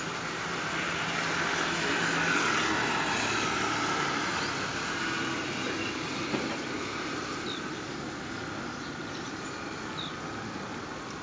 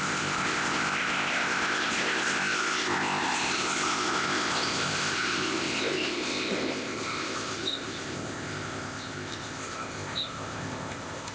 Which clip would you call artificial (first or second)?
second